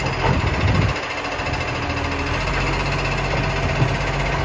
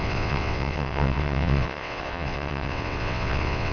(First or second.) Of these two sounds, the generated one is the second